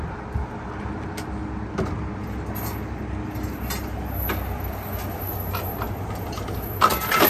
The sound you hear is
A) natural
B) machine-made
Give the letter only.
A